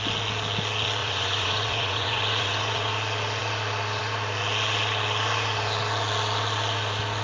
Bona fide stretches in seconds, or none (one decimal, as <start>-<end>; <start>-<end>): 0.0-1.0; 2.9-7.2